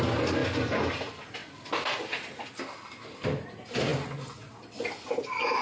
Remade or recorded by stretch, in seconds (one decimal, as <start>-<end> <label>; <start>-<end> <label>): 0.0-5.6 recorded